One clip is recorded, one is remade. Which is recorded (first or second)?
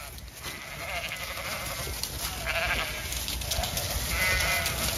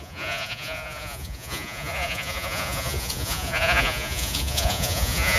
first